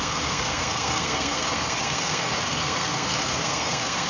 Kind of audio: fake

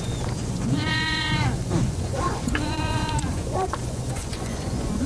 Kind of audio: fake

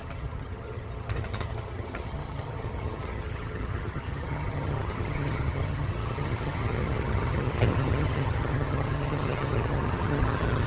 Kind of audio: fake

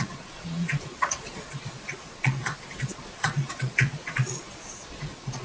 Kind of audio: fake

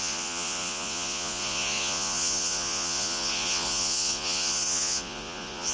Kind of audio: fake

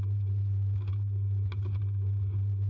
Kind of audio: real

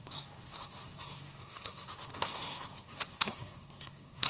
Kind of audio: fake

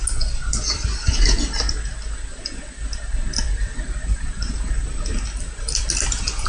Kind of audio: real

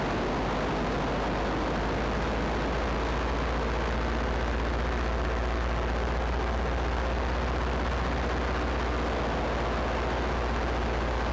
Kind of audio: real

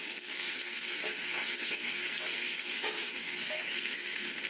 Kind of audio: fake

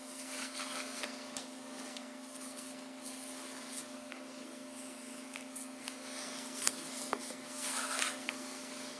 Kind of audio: fake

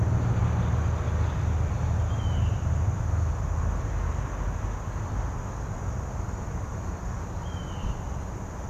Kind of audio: real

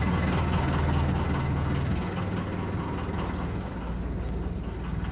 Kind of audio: real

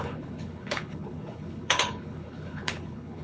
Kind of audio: fake